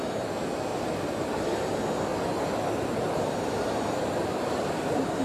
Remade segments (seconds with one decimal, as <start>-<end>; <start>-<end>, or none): 0.7-1.7; 2.1-5.2